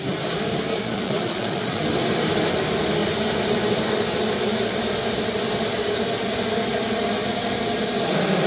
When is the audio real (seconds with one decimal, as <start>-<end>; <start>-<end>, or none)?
0.0-0.7; 1.8-8.5